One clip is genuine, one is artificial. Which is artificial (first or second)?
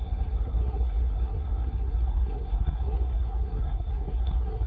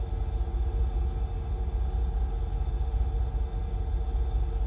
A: first